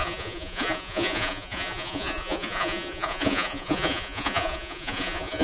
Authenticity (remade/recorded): remade